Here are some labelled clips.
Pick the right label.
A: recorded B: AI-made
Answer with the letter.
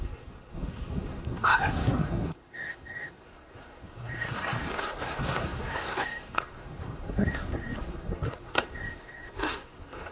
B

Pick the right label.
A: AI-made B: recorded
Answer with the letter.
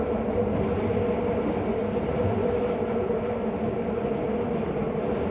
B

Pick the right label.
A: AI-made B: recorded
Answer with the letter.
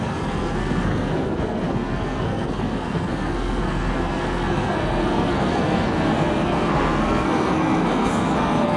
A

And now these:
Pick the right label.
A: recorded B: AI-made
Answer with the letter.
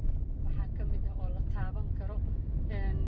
A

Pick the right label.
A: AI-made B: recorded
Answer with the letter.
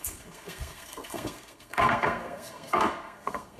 A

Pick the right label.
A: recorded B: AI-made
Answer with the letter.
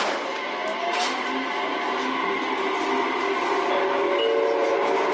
A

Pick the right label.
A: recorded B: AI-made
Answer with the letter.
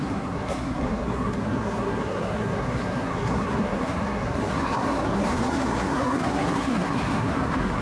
B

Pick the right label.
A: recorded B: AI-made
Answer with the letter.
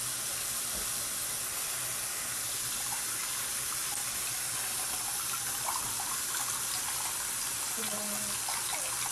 A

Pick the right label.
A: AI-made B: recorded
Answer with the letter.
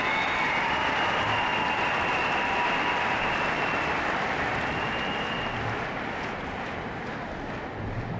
B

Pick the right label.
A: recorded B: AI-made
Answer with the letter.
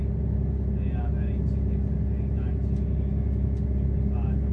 A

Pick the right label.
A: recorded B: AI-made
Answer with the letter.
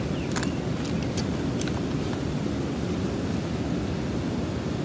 A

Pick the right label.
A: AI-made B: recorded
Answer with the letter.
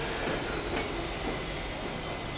B